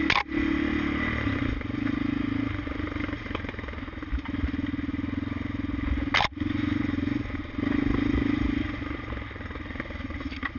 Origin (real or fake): real